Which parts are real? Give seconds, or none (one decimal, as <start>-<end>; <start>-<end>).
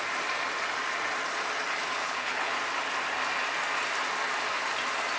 0.0-2.0; 2.6-5.2